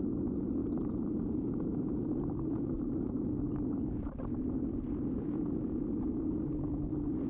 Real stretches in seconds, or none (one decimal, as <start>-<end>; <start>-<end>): 0.0-0.6; 3.4-7.3